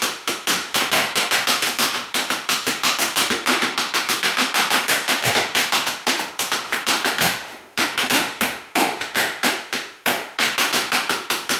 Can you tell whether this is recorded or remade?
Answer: remade